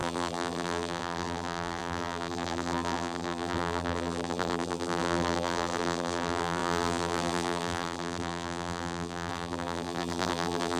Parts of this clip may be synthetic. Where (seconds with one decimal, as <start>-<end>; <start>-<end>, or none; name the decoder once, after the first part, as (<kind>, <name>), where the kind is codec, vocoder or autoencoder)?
0.0-10.8 (vocoder, BigVGAN v2)